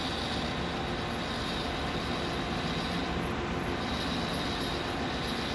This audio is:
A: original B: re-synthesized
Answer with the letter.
A